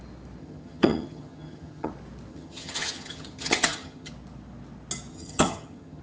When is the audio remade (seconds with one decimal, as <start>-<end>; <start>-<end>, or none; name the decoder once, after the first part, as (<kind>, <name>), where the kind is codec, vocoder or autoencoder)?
0.4-1.9 (vocoder, HiFi-GAN); 2.3-4.1; 5.1-6.0